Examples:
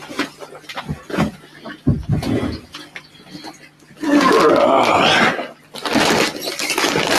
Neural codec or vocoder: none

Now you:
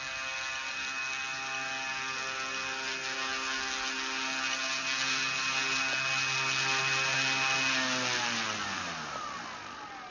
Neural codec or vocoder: none